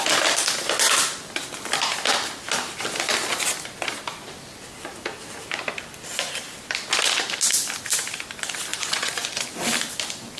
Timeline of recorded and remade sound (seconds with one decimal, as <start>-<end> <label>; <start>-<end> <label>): 0.0-8.7 recorded; 8.7-9.4 remade; 9.4-10.4 recorded